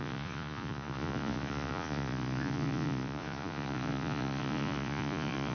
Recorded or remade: remade